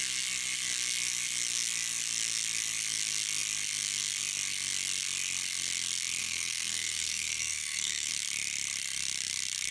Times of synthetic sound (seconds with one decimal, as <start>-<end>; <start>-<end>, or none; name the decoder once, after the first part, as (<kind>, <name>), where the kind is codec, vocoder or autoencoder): 6.2-8.1 (codec, SNAC)